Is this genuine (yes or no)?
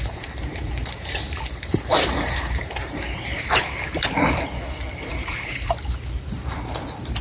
no